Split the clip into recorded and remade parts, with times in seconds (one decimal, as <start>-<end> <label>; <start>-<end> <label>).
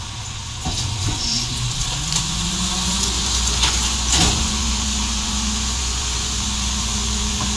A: 0.0-7.6 remade